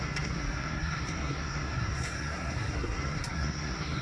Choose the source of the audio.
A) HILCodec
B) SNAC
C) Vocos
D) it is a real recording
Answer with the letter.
B